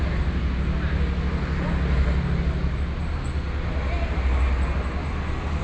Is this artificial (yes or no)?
no